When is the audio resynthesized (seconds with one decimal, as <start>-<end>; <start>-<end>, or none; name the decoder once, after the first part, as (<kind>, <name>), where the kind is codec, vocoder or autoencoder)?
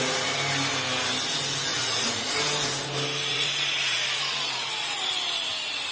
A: 1.7-2.3 (vocoder, Vocos); 3.3-5.1